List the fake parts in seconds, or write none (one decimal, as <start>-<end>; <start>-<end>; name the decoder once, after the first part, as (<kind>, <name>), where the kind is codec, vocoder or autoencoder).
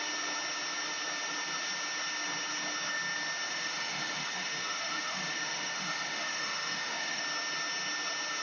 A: 3.5-7.2 (autoencoder, DAC-VAE)